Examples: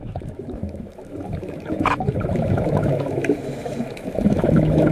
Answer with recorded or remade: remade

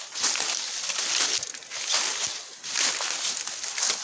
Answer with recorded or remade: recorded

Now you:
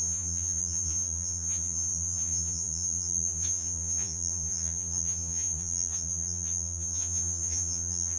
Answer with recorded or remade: remade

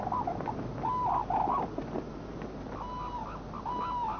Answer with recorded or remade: recorded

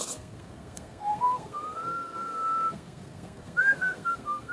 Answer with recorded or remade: remade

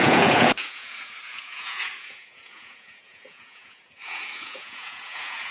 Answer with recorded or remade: remade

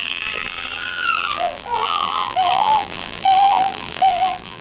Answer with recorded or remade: remade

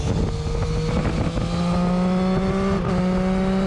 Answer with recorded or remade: recorded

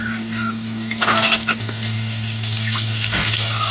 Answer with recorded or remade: remade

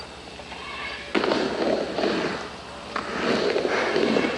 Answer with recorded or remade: recorded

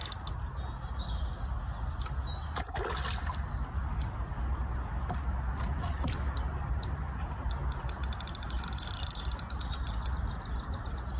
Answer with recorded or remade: recorded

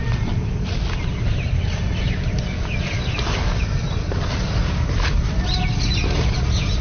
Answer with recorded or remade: recorded